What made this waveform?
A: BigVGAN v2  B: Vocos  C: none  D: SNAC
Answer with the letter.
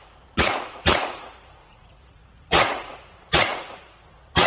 B